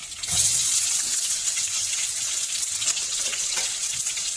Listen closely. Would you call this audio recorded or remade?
remade